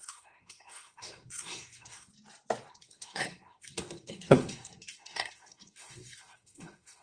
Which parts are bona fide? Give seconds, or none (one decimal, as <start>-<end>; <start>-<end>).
2.1-2.7